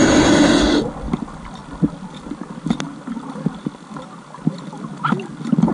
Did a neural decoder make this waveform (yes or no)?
no